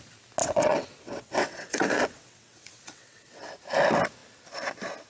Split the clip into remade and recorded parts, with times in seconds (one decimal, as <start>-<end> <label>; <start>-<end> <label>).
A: 0.0-0.4 recorded; 0.4-3.5 remade; 3.5-5.1 recorded